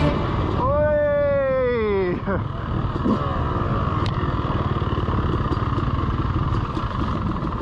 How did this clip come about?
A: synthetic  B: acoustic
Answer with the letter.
B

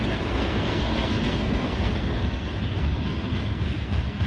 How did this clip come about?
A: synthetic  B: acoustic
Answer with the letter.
A